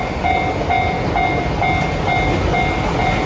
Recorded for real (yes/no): yes